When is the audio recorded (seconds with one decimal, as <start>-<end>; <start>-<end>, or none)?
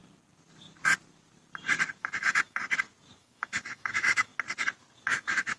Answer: 0.0-2.0; 2.6-3.2; 4.3-5.1